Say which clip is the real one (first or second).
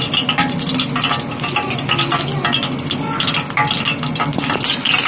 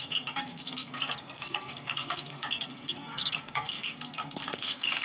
first